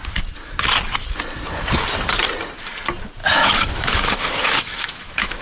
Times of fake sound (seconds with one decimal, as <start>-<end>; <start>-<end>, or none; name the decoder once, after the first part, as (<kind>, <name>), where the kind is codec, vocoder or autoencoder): 3.2-5.4 (autoencoder, DAC-VAE)